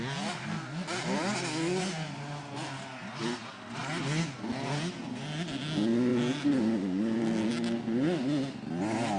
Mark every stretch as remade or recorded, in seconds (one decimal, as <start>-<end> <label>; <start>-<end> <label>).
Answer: 0.0-9.2 recorded